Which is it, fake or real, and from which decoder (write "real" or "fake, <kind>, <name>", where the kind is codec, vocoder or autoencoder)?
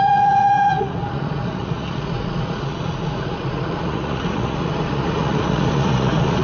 fake, vocoder, Vocos